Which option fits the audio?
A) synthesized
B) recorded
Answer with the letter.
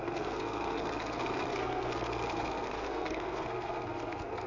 A